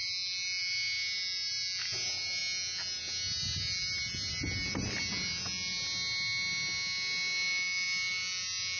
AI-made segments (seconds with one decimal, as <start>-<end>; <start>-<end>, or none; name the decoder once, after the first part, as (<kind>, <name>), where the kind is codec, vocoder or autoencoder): none